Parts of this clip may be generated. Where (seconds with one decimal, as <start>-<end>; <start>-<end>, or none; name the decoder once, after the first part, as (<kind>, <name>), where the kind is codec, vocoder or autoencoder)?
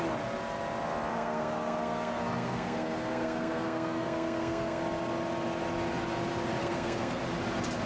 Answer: 1.1-4.8 (codec, SNAC); 6.6-7.2